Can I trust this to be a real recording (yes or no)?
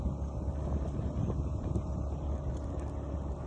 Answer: yes